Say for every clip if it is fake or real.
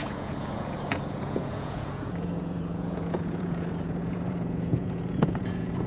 fake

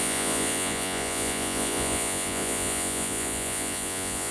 fake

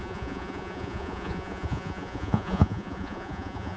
fake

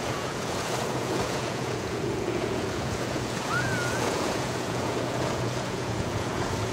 fake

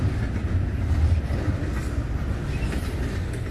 real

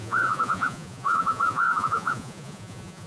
fake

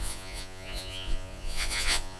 fake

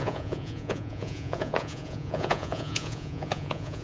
fake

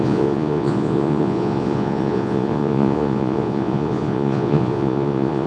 fake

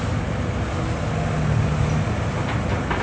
real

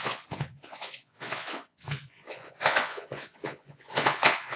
fake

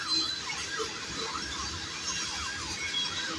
real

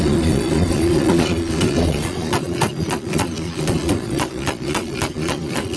fake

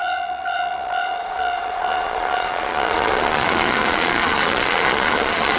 fake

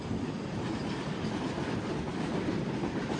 real